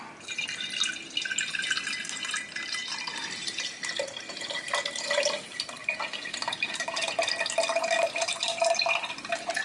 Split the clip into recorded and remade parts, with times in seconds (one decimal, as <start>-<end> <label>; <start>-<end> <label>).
0.0-2.8 recorded; 2.8-6.8 remade; 6.8-8.3 recorded; 8.3-9.6 remade